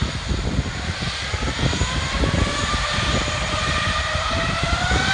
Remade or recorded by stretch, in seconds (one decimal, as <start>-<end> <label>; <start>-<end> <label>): 0.0-2.7 recorded; 2.7-5.1 remade